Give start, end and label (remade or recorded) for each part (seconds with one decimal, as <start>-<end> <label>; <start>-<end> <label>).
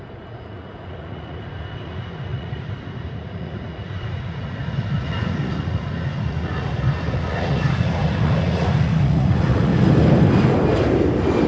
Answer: 0.0-9.7 remade; 9.7-11.5 recorded